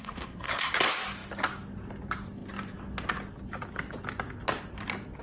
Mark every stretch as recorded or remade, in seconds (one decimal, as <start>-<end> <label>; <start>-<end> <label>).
0.0-0.7 remade; 0.7-5.2 recorded